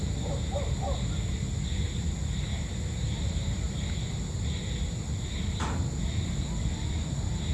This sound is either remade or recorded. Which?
recorded